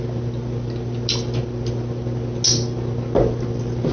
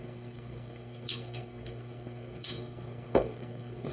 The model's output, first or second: second